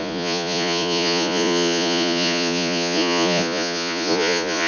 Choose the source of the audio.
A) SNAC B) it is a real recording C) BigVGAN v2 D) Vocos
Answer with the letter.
D